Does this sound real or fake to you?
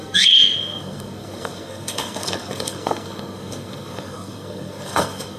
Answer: fake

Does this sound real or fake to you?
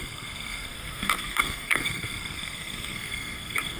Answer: fake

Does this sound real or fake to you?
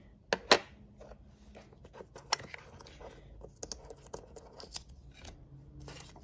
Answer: real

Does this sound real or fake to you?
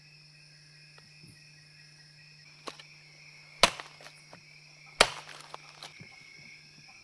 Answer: real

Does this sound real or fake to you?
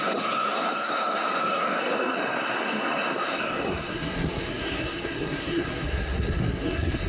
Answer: fake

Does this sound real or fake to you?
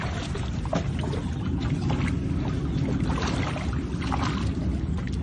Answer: real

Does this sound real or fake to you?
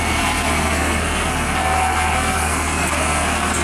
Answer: fake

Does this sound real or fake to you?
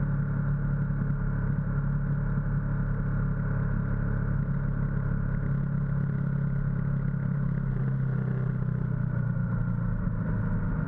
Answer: real